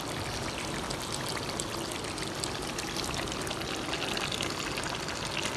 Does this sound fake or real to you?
real